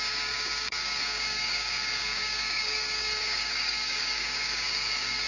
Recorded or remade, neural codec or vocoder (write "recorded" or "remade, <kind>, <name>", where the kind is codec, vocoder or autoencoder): remade, codec, DAC